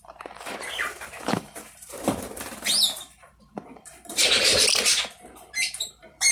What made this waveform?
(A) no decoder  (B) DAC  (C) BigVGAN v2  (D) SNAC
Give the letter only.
C